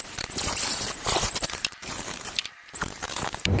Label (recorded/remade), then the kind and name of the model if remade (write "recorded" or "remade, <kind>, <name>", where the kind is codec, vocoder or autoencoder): remade, vocoder, BigVGAN v2